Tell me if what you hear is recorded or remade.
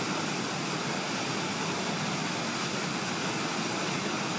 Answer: recorded